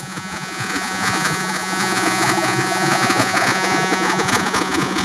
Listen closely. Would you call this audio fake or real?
fake